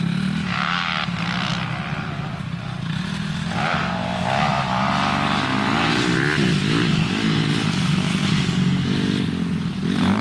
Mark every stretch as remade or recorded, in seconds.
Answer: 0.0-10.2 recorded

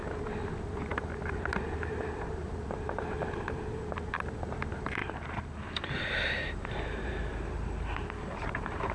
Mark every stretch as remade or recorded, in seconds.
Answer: 0.0-8.9 remade

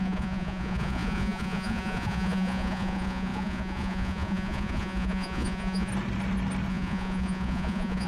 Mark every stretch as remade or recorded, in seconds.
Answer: 0.0-5.9 remade; 5.9-6.7 recorded; 6.7-8.1 remade

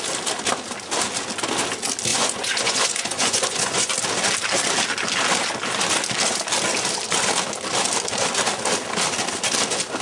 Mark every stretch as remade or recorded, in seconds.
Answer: 0.0-2.1 recorded; 2.1-3.9 remade; 3.9-10.0 recorded